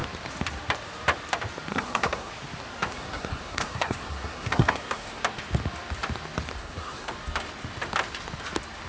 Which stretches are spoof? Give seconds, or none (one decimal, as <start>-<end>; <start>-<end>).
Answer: 1.7-2.3; 2.9-5.2; 6.6-7.1